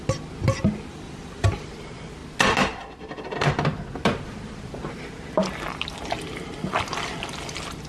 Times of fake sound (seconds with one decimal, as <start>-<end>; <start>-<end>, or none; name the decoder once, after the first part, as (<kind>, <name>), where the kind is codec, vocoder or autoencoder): 0.9-1.7 (vocoder, BigVGAN v2)